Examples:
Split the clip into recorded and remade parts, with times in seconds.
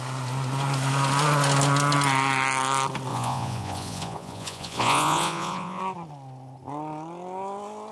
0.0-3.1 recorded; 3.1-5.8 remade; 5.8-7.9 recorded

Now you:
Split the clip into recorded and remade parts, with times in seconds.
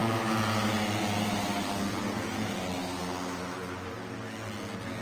0.0-5.0 recorded